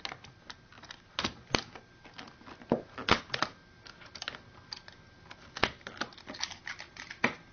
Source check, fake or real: real